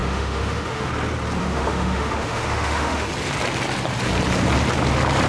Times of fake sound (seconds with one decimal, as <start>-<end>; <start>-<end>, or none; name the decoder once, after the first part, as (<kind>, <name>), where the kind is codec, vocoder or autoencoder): 0.0-0.9 (autoencoder, DAC-VAE); 1.4-3.1